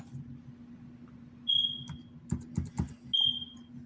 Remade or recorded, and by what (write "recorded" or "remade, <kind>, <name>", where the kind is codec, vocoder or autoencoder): recorded